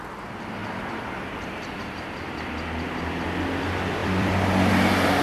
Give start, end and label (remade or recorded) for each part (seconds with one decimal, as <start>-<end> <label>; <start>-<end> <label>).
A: 0.0-0.6 recorded; 0.6-2.7 remade; 2.7-4.0 recorded; 4.0-4.7 remade; 4.7-5.2 recorded